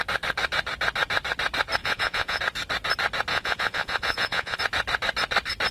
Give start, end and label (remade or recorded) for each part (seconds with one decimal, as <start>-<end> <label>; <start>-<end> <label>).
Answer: 0.0-1.8 recorded; 1.8-2.4 remade; 2.4-3.3 recorded; 3.3-4.6 remade; 4.6-5.7 recorded